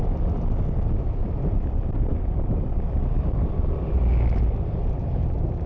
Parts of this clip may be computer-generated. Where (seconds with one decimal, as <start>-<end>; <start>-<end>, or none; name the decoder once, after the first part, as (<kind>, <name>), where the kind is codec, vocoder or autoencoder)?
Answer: none